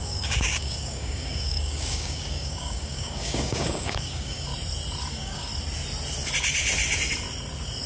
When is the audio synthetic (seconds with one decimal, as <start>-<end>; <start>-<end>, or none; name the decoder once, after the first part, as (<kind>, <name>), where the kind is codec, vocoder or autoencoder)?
0.0-4.5 (codec, DAC); 5.1-5.5